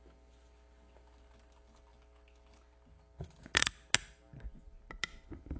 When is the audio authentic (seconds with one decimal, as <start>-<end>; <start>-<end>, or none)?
0.0-5.6